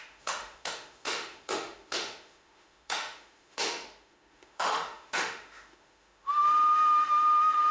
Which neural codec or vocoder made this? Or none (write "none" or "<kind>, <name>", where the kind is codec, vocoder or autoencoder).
autoencoder, DAC-VAE